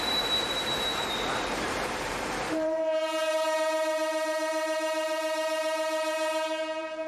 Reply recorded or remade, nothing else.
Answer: remade